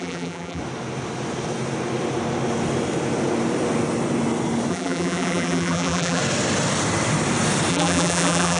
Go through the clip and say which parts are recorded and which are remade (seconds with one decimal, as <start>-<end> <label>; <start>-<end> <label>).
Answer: 0.0-0.6 remade; 0.6-4.7 recorded; 4.7-6.2 remade; 6.2-7.7 recorded; 7.7-8.6 remade